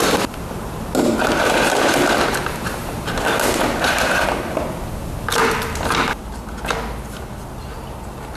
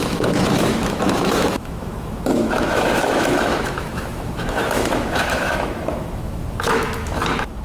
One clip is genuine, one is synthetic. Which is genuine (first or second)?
first